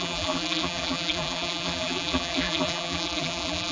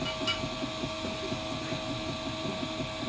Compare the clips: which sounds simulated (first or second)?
first